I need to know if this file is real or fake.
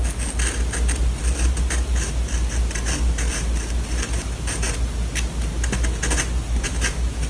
real